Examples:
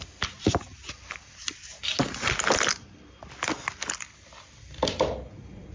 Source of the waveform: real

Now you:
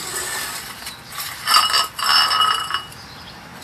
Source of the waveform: real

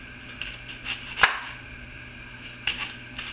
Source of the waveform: real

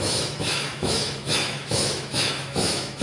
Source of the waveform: fake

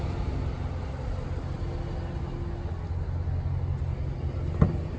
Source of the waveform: real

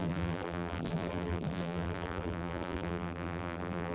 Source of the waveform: fake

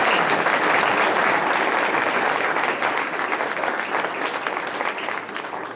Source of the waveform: real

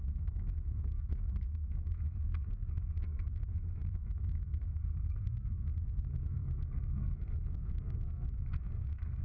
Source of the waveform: fake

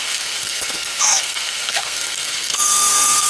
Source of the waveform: fake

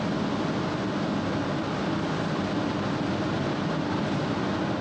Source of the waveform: real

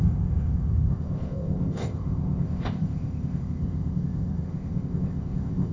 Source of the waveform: fake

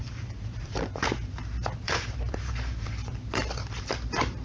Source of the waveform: fake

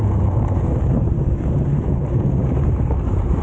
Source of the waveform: fake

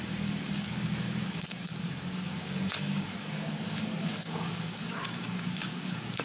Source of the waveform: fake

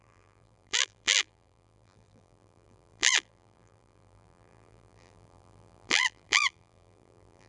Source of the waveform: fake